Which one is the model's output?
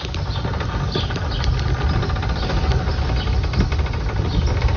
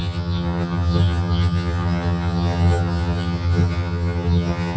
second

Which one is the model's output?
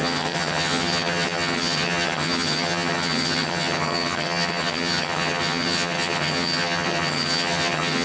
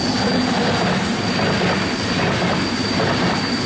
first